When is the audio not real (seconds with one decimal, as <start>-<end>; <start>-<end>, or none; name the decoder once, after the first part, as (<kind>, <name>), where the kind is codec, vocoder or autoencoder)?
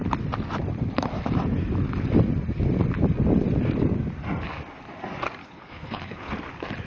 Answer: 5.4-6.3 (codec, HILCodec)